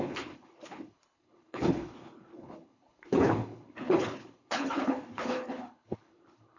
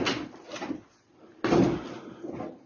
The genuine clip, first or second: second